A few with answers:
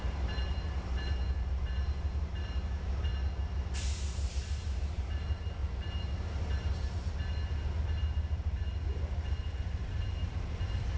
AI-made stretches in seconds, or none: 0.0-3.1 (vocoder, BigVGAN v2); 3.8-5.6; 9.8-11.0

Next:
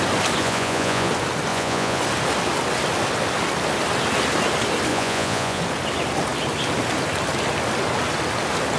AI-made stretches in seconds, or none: 0.4-1.1 (vocoder, Vocos); 1.5-2.0; 4.9-5.6

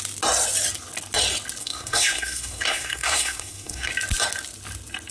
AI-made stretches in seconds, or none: 1.6-3.9 (codec, SNAC)

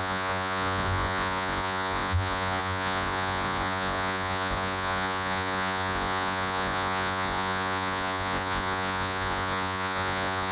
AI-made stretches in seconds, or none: 0.0-10.5 (vocoder, Vocos)

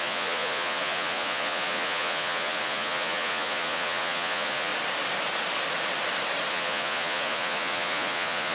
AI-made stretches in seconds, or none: 0.0-4.7 (vocoder, Vocos); 6.5-8.5

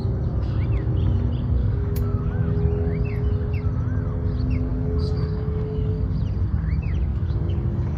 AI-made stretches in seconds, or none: 1.6-2.2 (codec, DAC); 4.7-6.2; 7.1-8.0

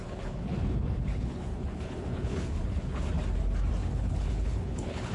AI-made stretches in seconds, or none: 0.0-3.1 (codec, HILCodec); 3.8-5.1

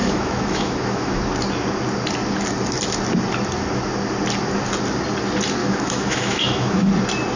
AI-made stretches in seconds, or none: 0.0-1.2 (autoencoder, DAC-VAE); 5.6-6.9